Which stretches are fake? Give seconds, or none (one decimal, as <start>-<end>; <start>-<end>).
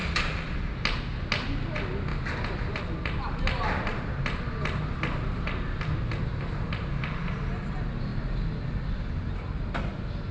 0.0-0.7; 2.1-2.8; 3.9-7.3